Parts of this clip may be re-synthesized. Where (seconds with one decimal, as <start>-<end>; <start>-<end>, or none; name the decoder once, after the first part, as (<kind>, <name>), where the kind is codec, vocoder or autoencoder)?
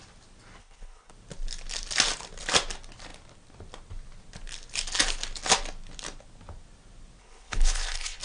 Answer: 0.6-1.1 (codec, HILCodec); 7.2-8.2